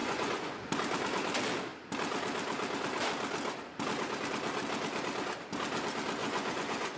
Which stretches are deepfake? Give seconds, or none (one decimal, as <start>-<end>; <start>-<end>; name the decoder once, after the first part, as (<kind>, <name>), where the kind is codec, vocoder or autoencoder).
0.0-0.7 (vocoder, Vocos); 6.2-7.0